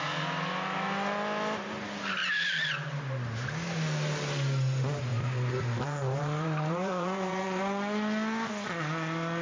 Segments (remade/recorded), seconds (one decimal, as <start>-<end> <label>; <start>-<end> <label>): 0.0-5.1 recorded; 5.1-7.6 remade; 7.6-9.4 recorded